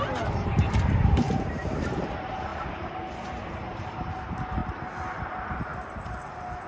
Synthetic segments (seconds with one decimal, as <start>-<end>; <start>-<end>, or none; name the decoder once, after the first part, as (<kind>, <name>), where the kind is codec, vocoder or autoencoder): 0.0-2.5 (vocoder, BigVGAN v2); 3.5-4.6; 5.2-5.7